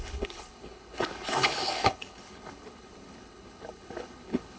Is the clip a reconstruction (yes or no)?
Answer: yes